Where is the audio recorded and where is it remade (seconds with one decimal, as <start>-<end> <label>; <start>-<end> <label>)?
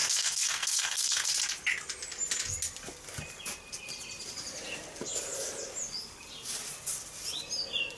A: 0.0-1.3 remade; 1.3-8.0 recorded